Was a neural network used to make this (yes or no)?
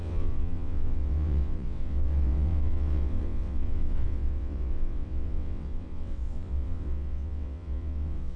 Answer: yes